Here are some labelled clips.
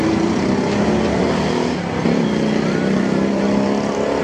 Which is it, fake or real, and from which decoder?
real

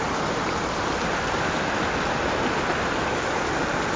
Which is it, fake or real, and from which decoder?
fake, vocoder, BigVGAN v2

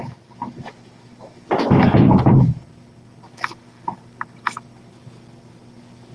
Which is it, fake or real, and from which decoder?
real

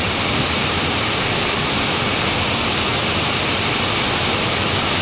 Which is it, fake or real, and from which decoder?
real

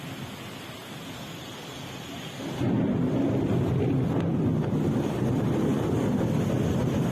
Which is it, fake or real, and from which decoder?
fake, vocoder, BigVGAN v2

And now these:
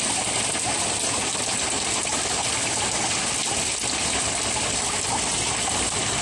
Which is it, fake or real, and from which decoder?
real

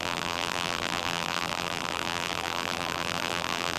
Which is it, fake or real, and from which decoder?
fake, vocoder, BigVGAN v2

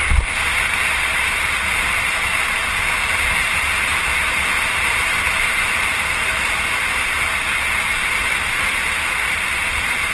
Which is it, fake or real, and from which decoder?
fake, vocoder, BigVGAN v2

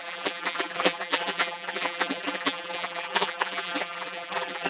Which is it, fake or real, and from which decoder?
fake, vocoder, BigVGAN v2